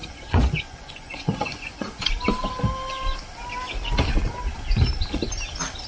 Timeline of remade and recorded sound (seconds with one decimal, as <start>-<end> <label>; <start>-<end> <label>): 0.0-2.0 remade; 2.0-5.9 recorded